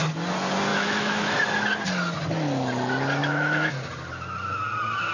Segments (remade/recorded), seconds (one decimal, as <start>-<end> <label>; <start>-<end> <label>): 0.0-0.7 recorded; 0.7-1.3 remade; 1.3-3.2 recorded; 3.2-3.7 remade; 3.7-5.1 recorded

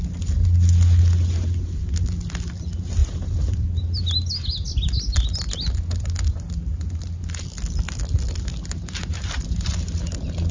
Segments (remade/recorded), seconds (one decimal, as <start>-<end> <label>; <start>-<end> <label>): 0.0-10.5 recorded

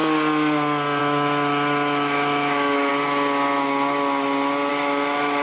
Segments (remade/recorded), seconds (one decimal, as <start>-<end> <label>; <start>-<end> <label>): 0.0-1.0 recorded; 1.0-2.9 remade; 2.9-4.7 recorded; 4.7-5.4 remade